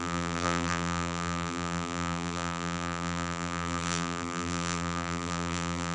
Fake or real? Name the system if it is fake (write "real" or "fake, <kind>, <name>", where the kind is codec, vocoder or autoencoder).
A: fake, vocoder, BigVGAN v2